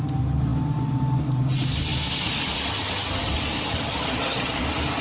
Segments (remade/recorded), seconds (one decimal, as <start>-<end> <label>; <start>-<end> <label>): 0.0-1.9 recorded; 1.9-5.0 remade

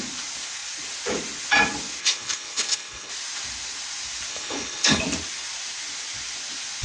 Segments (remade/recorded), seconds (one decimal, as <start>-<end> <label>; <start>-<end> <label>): 0.0-2.0 recorded; 2.0-3.1 remade; 3.1-4.3 recorded; 4.3-5.0 remade; 5.0-6.8 recorded